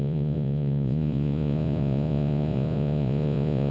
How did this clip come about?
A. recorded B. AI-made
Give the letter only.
B